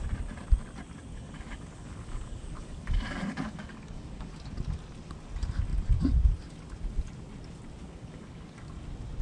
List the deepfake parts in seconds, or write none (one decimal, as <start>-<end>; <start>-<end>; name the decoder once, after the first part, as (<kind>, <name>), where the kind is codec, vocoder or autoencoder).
1.1-4.3 (codec, DAC); 7.8-8.6